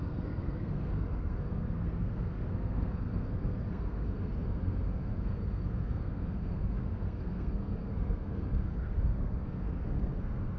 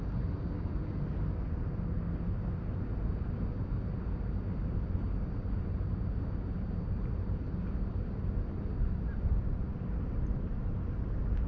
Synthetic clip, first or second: first